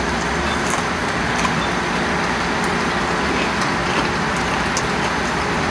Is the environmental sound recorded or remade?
recorded